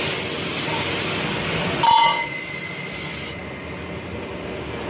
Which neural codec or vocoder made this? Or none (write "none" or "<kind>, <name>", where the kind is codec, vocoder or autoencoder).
none